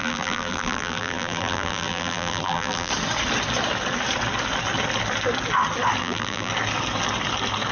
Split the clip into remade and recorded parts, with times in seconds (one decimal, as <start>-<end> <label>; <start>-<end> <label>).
0.0-2.9 remade; 2.9-6.0 recorded; 6.0-6.5 remade; 6.5-7.7 recorded